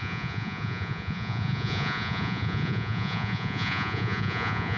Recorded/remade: remade